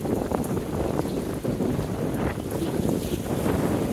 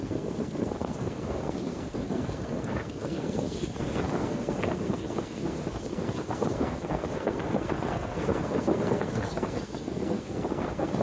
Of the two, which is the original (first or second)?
first